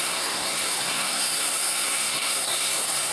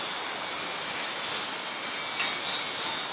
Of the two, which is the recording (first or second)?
second